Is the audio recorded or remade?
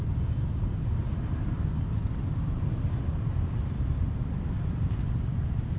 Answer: recorded